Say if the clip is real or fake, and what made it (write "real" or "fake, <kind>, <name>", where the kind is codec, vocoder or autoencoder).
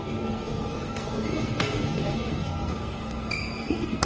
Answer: fake, codec, SNAC